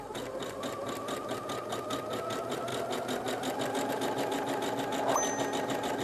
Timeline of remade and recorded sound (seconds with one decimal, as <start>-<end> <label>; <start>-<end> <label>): 0.0-6.0 recorded